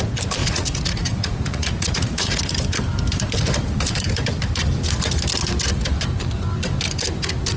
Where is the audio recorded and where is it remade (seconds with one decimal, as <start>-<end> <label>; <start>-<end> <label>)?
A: 0.0-0.4 recorded; 0.4-2.4 remade; 2.4-7.6 recorded